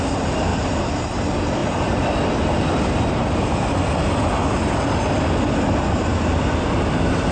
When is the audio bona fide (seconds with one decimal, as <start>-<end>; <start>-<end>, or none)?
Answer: 0.0-0.5; 1.1-6.1; 6.7-7.3